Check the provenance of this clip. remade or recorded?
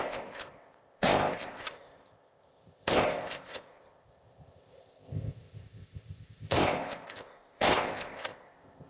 remade